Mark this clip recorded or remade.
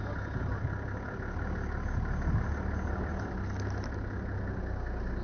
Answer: recorded